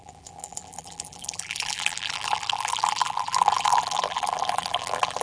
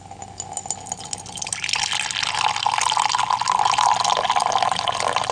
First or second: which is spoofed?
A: first